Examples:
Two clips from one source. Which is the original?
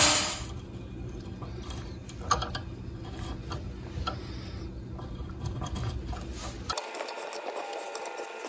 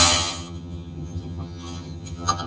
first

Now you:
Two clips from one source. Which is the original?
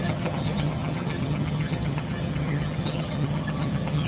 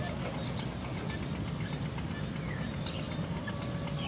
second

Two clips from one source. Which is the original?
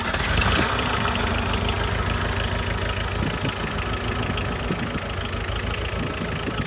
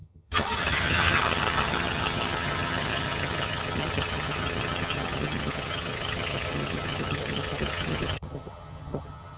first